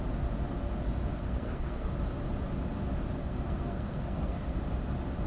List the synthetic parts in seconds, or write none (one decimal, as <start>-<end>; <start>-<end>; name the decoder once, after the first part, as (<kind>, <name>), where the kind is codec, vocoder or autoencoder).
1.1-1.9 (codec, SNAC); 3.2-4.6